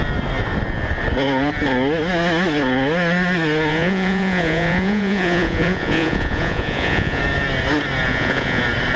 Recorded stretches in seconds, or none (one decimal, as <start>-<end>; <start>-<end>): 0.0-3.7; 7.2-8.1; 8.6-9.0